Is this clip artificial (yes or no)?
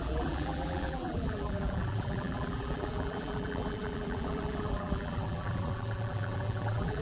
yes